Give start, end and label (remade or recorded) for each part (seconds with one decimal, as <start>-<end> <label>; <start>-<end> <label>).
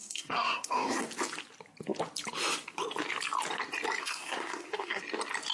0.0-1.0 remade; 1.0-4.0 recorded; 4.0-5.0 remade; 5.0-5.5 recorded